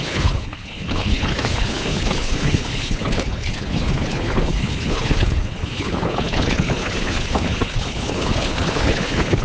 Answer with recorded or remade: remade